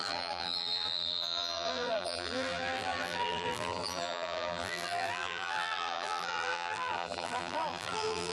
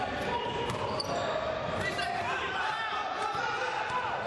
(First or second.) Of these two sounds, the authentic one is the second